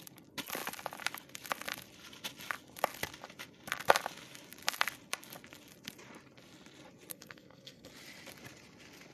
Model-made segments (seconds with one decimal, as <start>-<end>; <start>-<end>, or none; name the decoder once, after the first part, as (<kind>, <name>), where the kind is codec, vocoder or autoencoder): 7.1-7.9 (codec, SNAC)